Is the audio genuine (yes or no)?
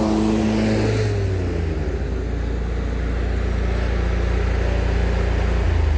yes